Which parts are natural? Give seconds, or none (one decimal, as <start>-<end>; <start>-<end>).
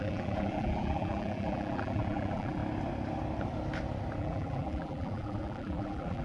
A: 2.6-4.2